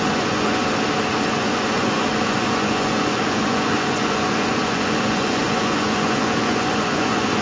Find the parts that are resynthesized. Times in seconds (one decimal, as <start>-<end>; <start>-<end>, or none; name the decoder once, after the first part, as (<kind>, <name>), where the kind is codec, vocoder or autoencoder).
0.0-0.6 (vocoder, Vocos); 1.3-7.4